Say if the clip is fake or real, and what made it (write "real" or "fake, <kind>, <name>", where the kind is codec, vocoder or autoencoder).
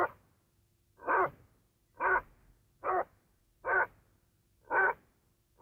real